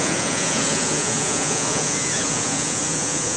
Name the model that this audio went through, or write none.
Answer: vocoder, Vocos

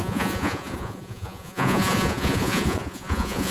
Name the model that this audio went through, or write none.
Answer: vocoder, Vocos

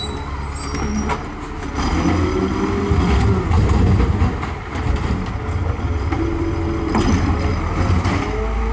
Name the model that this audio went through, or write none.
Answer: none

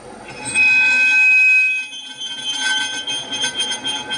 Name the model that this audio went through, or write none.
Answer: none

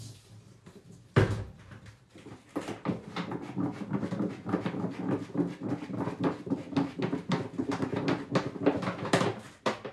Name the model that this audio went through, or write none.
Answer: none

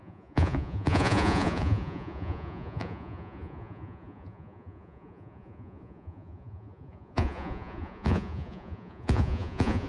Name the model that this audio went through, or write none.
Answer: vocoder, Vocos